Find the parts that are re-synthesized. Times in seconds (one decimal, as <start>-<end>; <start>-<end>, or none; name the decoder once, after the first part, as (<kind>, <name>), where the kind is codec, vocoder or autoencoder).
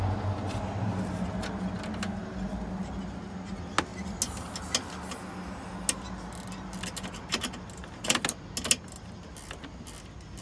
none